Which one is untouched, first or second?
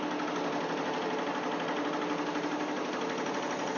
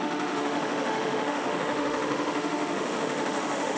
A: first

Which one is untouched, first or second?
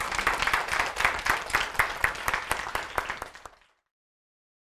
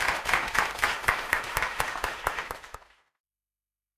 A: first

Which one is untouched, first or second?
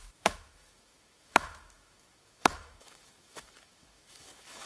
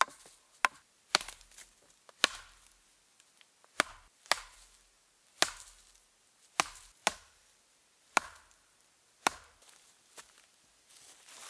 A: second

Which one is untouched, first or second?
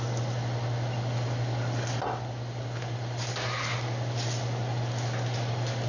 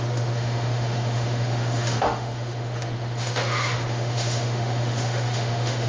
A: first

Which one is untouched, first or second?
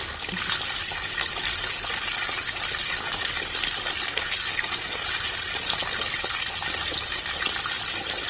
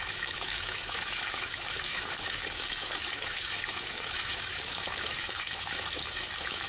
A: first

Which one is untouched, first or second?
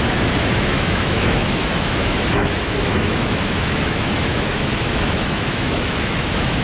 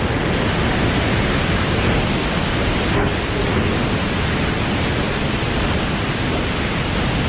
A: second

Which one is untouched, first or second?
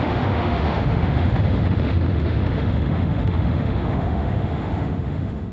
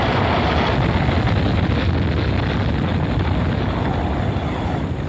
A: second